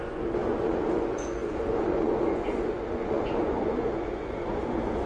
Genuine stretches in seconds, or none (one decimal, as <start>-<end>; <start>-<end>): none